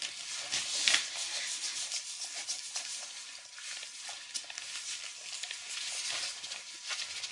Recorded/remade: recorded